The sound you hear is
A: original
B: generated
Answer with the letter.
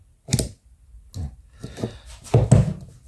A